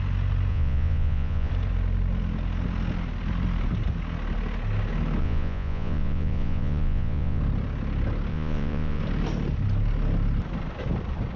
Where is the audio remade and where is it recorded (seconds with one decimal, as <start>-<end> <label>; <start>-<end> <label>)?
0.0-0.5 recorded; 0.5-1.5 remade; 1.5-5.2 recorded; 5.2-7.4 remade; 7.4-8.3 recorded; 8.3-9.0 remade; 9.0-11.4 recorded